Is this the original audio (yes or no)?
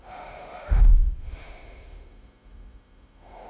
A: no